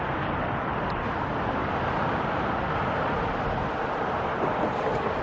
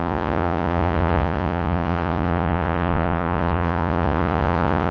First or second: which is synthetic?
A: second